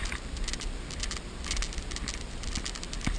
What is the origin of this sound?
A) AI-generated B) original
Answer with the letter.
B